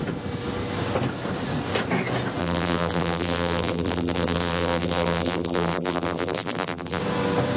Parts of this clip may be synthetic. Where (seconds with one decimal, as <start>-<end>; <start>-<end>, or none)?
2.4-7.0